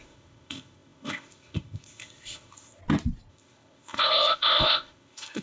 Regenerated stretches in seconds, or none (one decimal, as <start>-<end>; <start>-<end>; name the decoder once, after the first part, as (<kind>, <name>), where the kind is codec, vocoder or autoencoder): 0.0-2.8 (codec, ZipCodec); 3.3-5.4